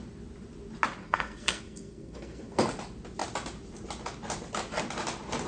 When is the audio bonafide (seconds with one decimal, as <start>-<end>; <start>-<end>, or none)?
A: 0.0-1.0; 2.6-5.5